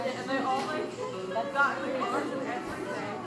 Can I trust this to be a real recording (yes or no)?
yes